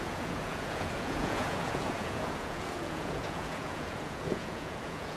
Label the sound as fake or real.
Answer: fake